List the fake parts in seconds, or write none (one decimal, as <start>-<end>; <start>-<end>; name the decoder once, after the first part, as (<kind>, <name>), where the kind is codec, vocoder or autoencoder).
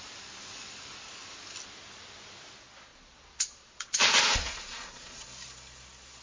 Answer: 2.9-5.3 (vocoder, Vocos)